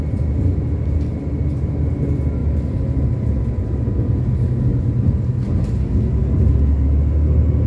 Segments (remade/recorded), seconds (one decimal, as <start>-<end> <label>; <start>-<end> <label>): 0.0-7.7 recorded